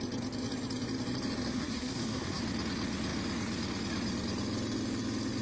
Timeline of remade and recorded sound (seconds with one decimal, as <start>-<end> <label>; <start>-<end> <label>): 0.0-1.5 recorded; 1.5-2.4 remade; 2.4-5.4 recorded